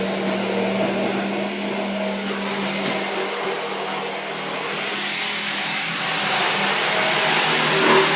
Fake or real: real